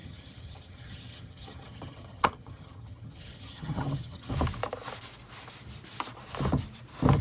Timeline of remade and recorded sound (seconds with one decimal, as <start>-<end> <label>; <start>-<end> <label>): 0.0-4.3 remade; 4.3-7.2 recorded